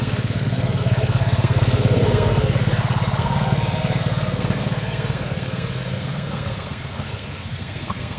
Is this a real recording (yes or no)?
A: no